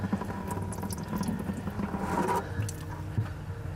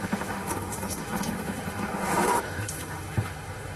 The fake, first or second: second